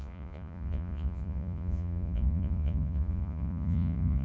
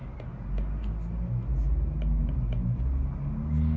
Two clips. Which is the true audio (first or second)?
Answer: second